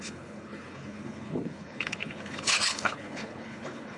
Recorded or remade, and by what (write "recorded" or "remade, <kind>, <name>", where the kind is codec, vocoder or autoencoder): remade, codec, HILCodec